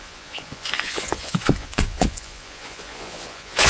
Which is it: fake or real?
fake